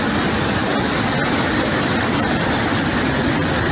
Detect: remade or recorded recorded